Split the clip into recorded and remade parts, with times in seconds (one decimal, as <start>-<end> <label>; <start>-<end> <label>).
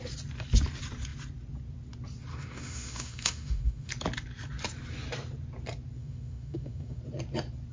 0.0-2.3 recorded; 2.3-3.9 remade; 3.9-6.0 recorded; 6.0-7.0 remade; 7.0-7.7 recorded